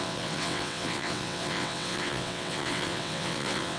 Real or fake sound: fake